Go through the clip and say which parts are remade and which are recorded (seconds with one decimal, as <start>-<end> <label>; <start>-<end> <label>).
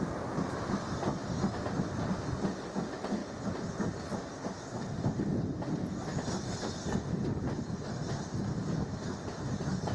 0.0-1.2 remade; 1.2-1.8 recorded; 1.8-3.2 remade; 3.2-4.9 recorded; 4.9-9.9 remade